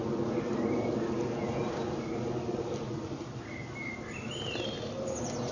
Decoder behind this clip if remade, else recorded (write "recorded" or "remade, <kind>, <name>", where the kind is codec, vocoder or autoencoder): recorded